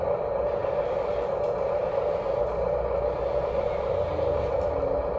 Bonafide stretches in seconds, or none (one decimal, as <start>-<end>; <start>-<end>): 0.0-5.2